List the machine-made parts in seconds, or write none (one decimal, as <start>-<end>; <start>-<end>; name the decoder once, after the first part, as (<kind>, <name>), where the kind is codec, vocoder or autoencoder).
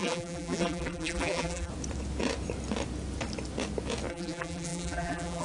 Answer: 0.0-1.7 (vocoder, BigVGAN v2); 4.1-5.4